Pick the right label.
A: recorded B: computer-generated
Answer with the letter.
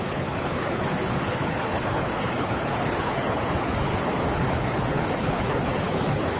B